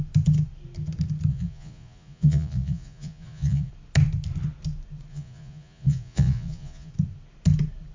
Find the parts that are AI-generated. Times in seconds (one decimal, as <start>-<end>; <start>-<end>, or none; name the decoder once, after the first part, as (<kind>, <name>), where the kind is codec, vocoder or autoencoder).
1.3-3.7 (vocoder, Vocos); 5.1-6.9